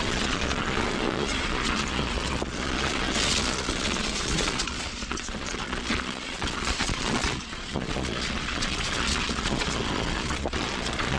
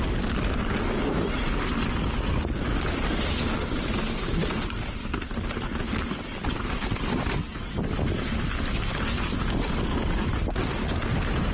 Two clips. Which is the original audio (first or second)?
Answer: second